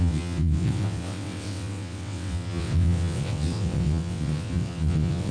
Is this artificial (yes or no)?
yes